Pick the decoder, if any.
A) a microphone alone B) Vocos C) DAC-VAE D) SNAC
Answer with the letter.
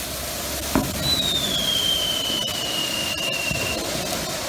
A